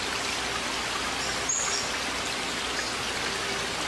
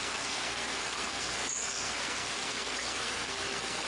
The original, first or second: first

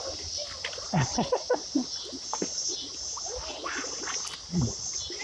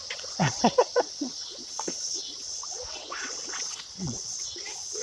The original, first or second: first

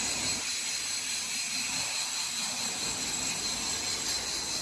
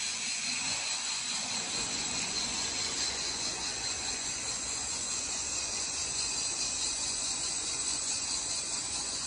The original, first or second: first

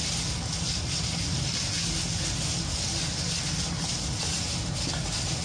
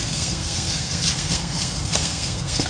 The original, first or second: first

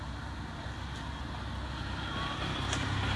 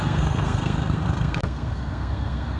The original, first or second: first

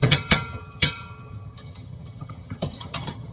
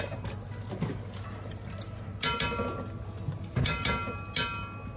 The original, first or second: second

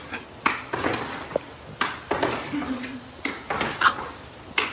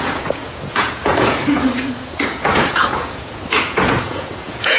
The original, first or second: first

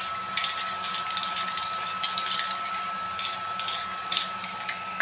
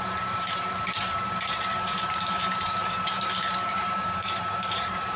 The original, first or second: first